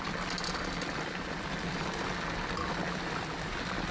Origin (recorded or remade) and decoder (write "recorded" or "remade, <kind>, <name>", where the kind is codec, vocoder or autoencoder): recorded